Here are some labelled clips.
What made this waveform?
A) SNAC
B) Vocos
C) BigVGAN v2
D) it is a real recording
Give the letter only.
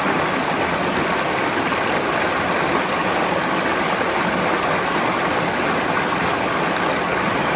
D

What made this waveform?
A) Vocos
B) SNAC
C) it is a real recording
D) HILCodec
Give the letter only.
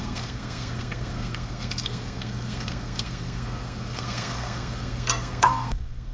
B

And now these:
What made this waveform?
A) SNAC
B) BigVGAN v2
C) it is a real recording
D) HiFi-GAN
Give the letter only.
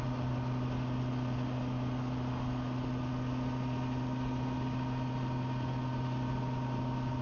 C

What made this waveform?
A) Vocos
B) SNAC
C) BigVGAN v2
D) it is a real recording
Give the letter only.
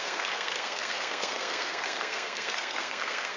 B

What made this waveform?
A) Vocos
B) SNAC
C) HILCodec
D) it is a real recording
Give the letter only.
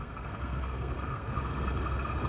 B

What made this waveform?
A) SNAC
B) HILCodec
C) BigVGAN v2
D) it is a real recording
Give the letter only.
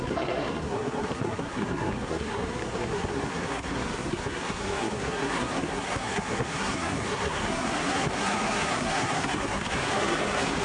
A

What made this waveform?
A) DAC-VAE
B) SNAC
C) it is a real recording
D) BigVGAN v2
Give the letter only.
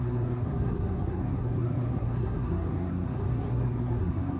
B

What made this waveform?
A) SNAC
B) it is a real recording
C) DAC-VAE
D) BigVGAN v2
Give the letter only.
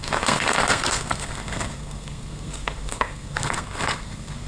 A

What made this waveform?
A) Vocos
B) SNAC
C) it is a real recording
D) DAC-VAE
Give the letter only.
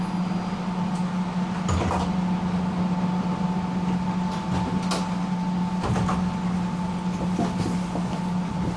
C